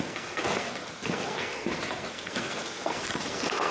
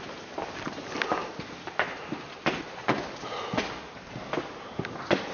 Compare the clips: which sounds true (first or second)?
second